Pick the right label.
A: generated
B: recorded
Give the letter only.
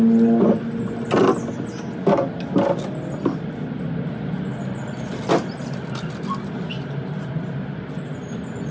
B